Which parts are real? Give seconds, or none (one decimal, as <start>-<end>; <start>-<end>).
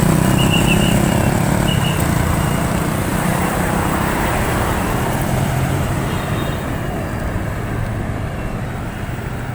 0.0-3.1; 7.0-9.5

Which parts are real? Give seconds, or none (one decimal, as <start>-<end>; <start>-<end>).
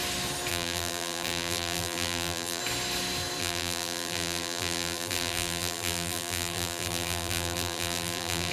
0.0-0.5; 2.6-3.4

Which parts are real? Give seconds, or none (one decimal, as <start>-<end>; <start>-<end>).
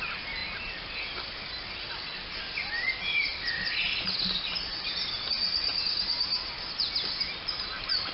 0.0-8.1